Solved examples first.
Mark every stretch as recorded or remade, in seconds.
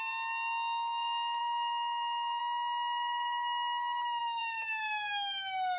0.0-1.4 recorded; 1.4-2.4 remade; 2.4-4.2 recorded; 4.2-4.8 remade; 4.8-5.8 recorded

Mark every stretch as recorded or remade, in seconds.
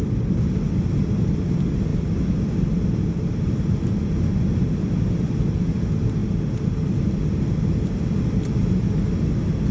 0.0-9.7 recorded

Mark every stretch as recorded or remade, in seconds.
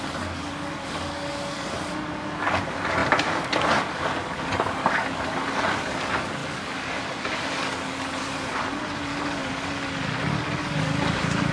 0.0-11.5 remade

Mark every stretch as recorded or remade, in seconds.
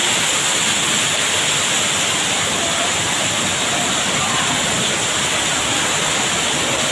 0.0-6.9 recorded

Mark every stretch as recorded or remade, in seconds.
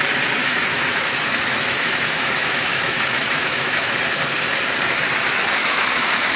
0.0-0.4 recorded; 0.4-3.9 remade; 3.9-5.6 recorded; 5.6-6.4 remade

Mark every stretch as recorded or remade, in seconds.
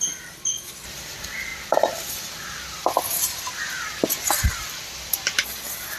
0.0-4.5 recorded; 4.5-5.4 remade; 5.4-6.0 recorded